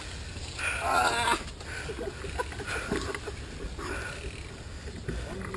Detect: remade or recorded recorded